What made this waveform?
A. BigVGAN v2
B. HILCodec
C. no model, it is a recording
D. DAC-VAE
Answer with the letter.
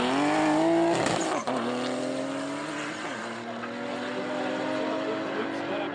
C